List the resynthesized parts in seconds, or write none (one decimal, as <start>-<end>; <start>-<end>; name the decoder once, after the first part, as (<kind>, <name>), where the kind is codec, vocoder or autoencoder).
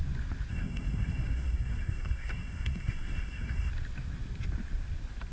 0.5-3.7 (codec, SNAC)